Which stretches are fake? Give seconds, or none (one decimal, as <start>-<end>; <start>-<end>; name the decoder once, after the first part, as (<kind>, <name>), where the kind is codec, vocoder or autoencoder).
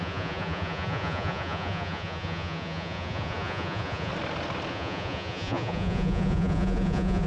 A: 0.0-4.1 (vocoder, Vocos); 4.7-7.3